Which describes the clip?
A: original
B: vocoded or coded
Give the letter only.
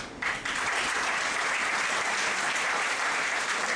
B